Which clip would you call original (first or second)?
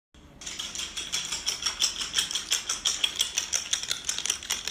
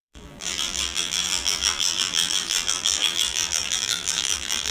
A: first